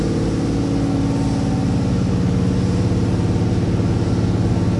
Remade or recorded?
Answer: recorded